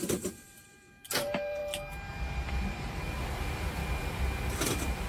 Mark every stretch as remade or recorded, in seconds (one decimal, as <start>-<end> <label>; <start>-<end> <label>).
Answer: 0.0-1.6 remade; 1.6-2.5 recorded; 2.5-3.8 remade; 3.8-5.1 recorded